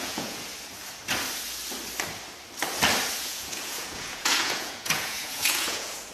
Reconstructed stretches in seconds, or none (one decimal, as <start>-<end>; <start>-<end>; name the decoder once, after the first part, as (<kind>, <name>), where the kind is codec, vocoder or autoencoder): 0.0-0.5 (vocoder, Vocos); 3.1-6.1

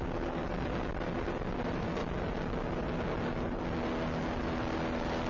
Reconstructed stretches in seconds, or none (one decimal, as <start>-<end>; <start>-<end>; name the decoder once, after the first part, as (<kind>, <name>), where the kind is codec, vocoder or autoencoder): none

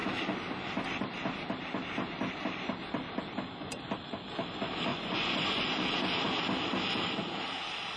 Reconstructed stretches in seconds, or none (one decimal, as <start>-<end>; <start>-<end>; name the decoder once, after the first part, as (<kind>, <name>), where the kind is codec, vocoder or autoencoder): 4.9-5.6 (vocoder, Vocos)

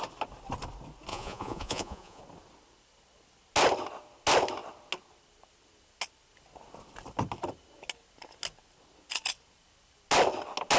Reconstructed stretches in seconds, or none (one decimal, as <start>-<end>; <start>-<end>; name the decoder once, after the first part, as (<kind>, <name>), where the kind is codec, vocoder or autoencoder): 1.1-2.2 (vocoder, Vocos)

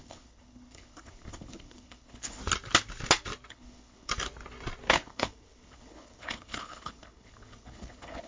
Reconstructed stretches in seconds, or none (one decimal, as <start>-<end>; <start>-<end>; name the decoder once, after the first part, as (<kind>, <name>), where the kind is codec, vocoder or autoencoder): 0.0-2.4 (codec, HILCodec); 3.5-4.1; 4.9-8.3

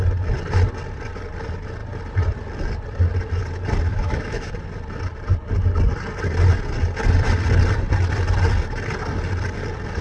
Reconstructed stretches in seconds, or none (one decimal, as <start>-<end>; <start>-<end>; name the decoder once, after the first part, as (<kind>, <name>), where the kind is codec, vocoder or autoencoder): 3.9-4.5 (autoencoder, DAC-VAE)

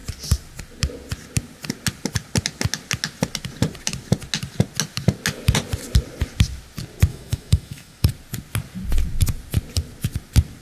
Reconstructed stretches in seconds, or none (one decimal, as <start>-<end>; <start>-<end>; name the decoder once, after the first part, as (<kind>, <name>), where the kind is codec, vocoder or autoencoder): 7.1-8.1 (autoencoder, DAC-VAE)